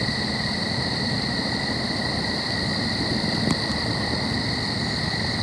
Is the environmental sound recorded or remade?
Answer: recorded